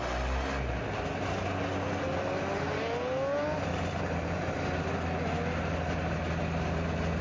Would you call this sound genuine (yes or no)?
yes